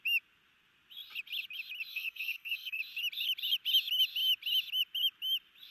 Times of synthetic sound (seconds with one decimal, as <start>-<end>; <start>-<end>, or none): 1.9-2.8